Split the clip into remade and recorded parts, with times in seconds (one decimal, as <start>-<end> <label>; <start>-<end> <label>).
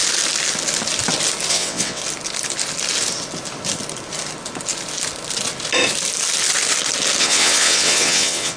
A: 0.0-1.5 recorded; 1.5-2.0 remade; 2.0-7.2 recorded; 7.2-8.6 remade